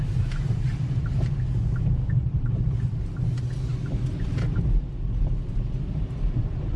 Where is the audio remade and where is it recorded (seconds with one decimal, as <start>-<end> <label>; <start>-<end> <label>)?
0.0-3.0 remade; 3.0-3.8 recorded; 3.8-6.8 remade